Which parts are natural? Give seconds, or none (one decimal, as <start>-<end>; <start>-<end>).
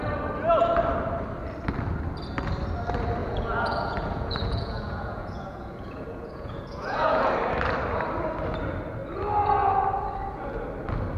0.0-3.2; 7.3-11.2